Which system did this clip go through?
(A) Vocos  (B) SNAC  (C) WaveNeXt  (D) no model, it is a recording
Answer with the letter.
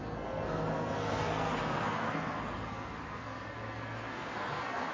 B